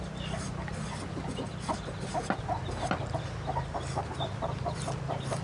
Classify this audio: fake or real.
real